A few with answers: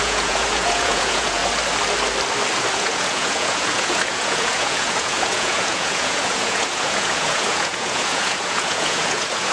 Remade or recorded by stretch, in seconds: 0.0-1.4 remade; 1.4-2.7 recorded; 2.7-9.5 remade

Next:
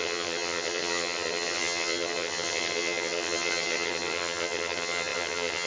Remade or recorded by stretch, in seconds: 0.0-5.7 remade

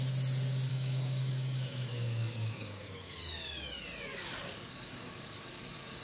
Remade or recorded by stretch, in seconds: 0.0-0.7 recorded; 0.7-3.2 remade; 3.2-4.1 recorded; 4.1-6.0 remade